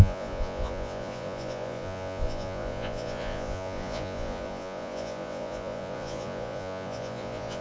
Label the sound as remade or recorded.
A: remade